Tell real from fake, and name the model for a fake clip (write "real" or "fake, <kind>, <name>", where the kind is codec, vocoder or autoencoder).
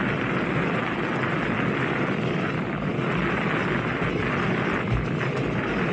real